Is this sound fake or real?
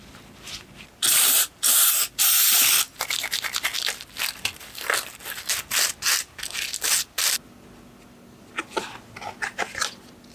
real